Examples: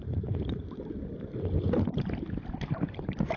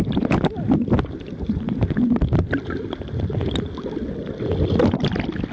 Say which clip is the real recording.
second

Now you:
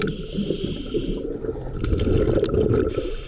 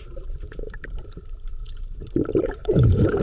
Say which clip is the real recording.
first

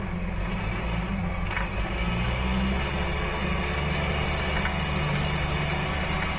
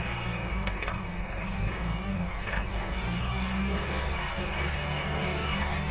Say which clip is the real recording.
first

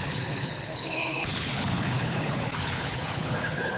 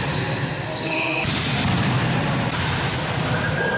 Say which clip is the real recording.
second